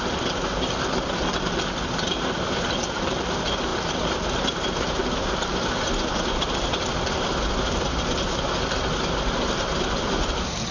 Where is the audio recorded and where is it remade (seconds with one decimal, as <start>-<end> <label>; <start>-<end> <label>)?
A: 0.0-10.7 recorded